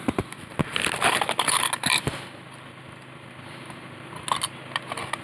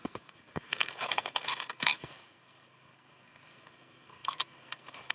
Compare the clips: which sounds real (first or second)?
first